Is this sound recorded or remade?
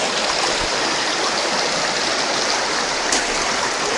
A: recorded